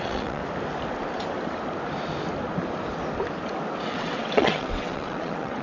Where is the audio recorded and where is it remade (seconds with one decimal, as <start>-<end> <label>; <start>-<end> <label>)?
0.0-0.4 remade; 0.4-3.8 recorded; 3.8-5.6 remade